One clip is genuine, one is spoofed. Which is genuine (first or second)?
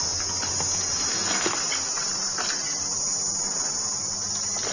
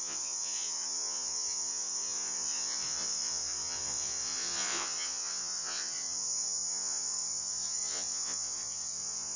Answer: first